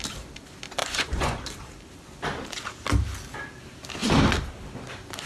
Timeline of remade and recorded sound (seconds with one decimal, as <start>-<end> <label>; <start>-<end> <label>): 0.0-0.8 recorded; 0.8-1.4 remade; 1.4-5.3 recorded